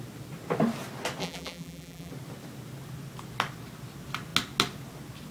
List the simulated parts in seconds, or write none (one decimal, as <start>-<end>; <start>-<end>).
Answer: 1.2-2.1